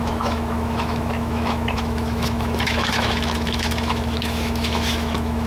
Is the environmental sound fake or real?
fake